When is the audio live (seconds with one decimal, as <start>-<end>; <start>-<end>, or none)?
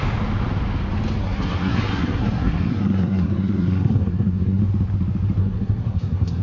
0.0-1.2; 4.6-5.4